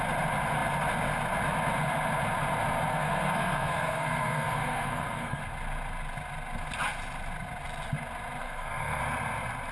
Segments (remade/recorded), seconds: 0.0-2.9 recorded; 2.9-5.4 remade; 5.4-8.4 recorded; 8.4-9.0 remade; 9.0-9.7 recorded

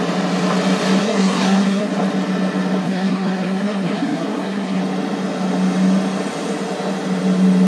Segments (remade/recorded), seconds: 0.0-1.0 recorded; 1.0-1.9 remade; 1.9-2.8 recorded; 2.8-4.8 remade; 4.8-7.7 recorded